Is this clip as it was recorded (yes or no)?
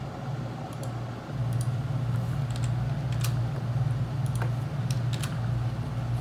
yes